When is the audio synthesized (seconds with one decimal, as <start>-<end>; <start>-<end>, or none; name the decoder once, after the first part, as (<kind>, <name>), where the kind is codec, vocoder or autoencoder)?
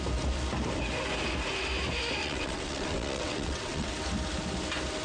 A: 2.2-3.9 (vocoder, WaveNeXt)